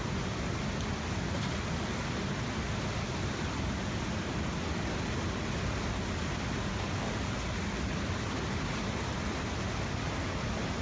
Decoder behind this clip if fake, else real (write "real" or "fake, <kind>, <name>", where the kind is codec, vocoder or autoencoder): real